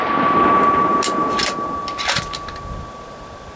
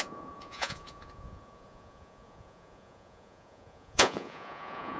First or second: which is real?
first